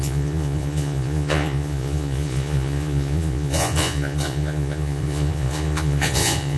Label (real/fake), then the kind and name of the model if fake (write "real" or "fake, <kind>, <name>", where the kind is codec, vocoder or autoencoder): fake, vocoder, Vocos